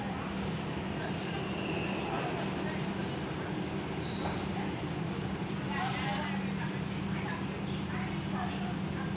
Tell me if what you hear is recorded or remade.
recorded